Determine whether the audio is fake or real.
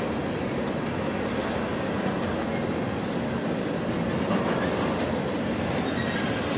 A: real